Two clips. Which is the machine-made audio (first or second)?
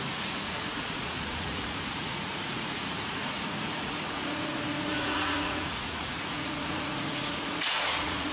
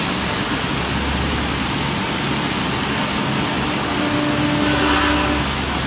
first